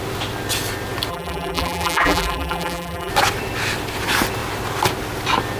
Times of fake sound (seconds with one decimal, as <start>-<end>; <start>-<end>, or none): 1.1-3.1